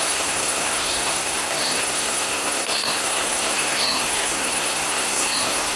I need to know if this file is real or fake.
fake